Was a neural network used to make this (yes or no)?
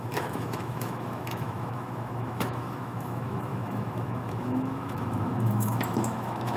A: yes